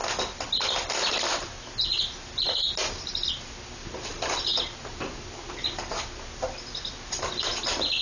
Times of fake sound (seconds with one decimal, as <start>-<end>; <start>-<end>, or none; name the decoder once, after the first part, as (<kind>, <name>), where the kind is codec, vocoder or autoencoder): none